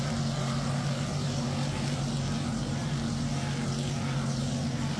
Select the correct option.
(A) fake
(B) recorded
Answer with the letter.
B